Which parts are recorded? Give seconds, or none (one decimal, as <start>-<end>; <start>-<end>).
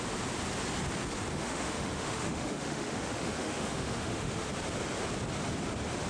0.0-1.3; 4.5-6.1